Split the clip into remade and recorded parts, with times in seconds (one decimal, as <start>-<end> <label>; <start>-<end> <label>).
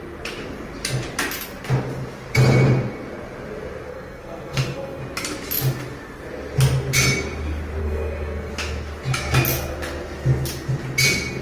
0.0-3.9 recorded; 3.9-5.0 remade; 5.0-7.8 recorded; 7.8-8.5 remade; 8.5-11.4 recorded